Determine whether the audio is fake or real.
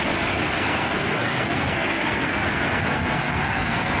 fake